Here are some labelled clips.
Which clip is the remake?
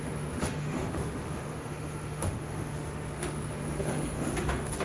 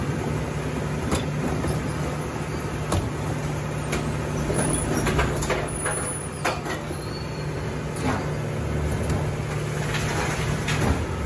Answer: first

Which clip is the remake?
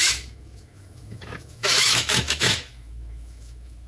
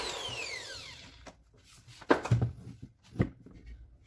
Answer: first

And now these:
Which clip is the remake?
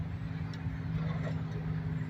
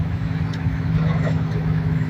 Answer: second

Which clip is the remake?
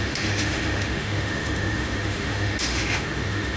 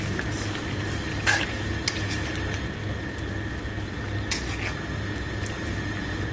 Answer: first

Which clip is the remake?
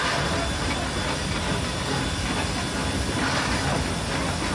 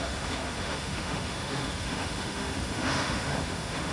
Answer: second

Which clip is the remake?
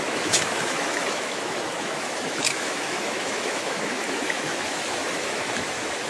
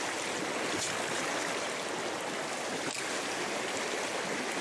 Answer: first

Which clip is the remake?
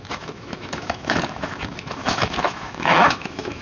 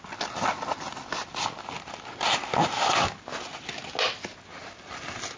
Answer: first